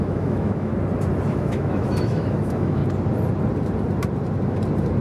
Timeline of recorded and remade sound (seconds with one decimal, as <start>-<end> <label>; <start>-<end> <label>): 0.0-0.7 remade; 0.7-1.3 recorded; 1.3-2.8 remade; 2.8-5.0 recorded